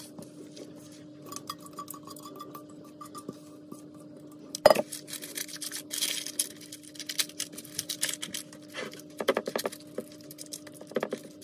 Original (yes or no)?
yes